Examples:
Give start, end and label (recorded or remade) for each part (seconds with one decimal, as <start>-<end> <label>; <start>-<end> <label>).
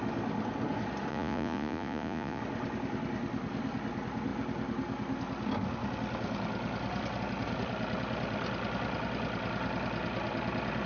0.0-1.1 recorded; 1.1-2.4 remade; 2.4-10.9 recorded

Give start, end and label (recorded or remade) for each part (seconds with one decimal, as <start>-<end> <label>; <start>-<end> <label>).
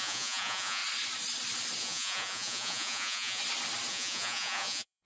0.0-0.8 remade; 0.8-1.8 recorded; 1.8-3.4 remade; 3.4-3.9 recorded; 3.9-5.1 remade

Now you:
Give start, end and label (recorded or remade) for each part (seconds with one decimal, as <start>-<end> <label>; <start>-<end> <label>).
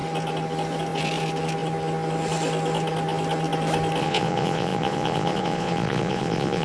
0.0-4.0 recorded; 4.0-6.6 remade